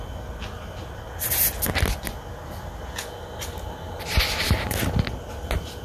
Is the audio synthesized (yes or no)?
no